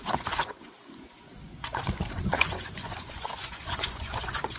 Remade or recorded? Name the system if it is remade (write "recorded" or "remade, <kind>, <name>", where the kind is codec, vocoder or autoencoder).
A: remade, vocoder, Vocos